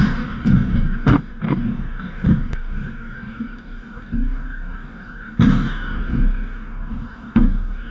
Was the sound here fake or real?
fake